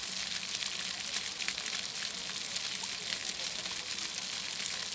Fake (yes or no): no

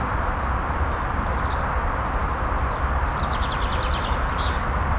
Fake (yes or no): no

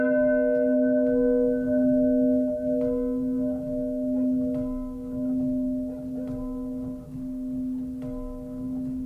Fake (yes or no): no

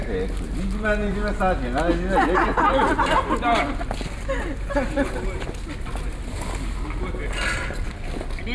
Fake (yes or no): no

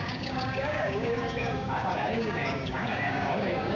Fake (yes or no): yes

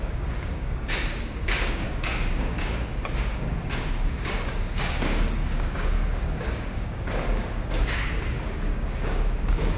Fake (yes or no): yes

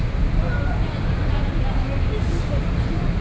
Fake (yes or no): no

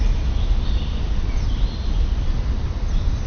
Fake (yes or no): no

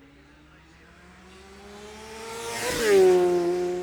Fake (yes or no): no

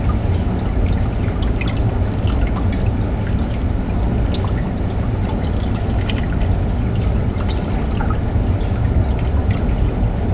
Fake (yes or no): no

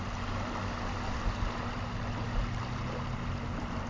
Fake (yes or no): no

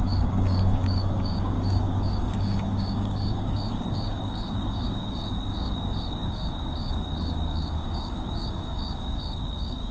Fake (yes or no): yes